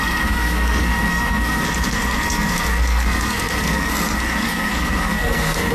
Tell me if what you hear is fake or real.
fake